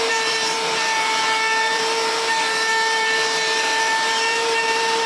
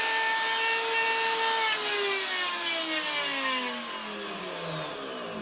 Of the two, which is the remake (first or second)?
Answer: first